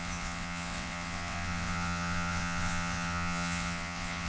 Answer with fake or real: fake